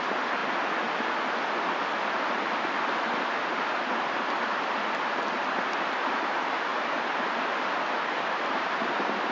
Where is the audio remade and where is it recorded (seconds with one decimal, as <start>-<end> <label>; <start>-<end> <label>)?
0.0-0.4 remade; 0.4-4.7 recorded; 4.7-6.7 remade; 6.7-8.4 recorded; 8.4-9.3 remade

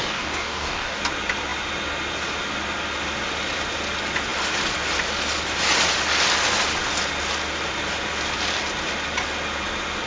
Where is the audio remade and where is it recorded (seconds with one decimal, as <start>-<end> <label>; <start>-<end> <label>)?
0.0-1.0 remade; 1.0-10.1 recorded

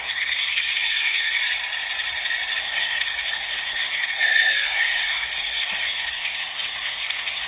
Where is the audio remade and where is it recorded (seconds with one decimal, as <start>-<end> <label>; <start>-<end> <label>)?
0.0-1.4 remade; 1.4-2.6 recorded; 2.6-7.5 remade

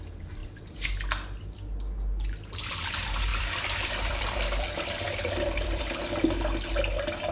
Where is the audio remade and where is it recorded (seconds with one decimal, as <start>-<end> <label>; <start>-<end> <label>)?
0.0-3.3 recorded; 3.3-5.8 remade; 5.8-7.3 recorded

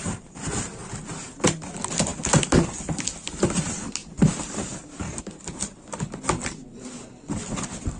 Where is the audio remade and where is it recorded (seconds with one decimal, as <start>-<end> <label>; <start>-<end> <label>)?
0.0-8.0 recorded